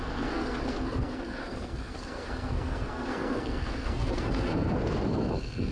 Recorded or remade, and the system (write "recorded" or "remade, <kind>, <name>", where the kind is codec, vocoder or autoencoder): remade, codec, SNAC